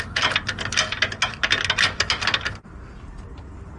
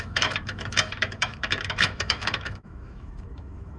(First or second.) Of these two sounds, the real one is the first